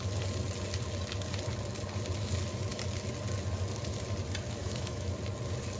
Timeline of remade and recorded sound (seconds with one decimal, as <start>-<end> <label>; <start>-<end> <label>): 0.0-4.6 recorded; 4.6-5.1 remade; 5.1-5.8 recorded